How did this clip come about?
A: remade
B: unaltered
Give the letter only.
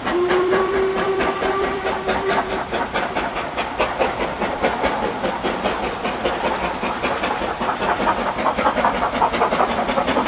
A